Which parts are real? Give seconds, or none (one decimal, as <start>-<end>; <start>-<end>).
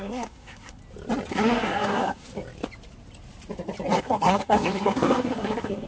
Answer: 0.8-1.3; 2.3-4.0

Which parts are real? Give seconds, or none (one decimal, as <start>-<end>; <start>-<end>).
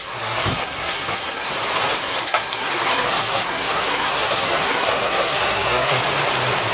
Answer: 1.5-2.0; 6.0-6.7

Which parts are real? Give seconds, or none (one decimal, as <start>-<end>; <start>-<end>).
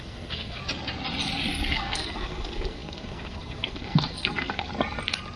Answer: 0.6-1.7; 4.7-5.4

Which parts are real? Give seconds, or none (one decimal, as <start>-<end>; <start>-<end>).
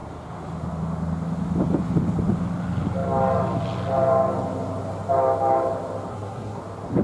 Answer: 0.0-6.1; 6.6-7.0